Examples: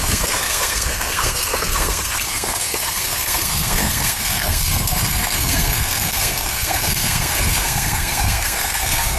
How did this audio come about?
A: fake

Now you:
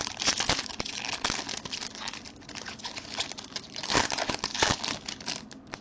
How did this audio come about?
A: real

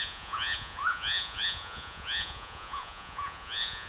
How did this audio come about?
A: fake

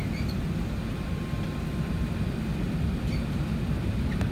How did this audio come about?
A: real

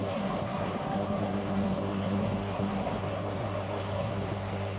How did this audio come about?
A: fake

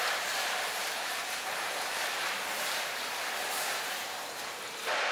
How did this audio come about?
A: fake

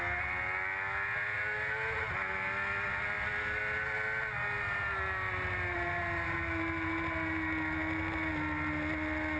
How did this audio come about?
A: real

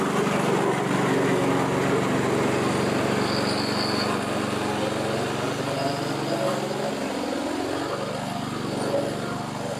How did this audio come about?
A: real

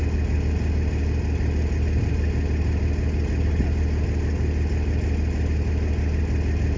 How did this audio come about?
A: real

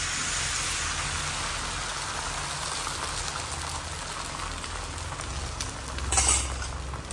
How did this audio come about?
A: real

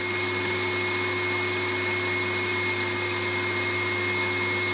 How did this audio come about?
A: real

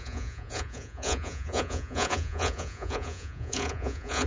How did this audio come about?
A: fake